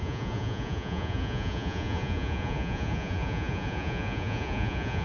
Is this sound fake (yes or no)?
yes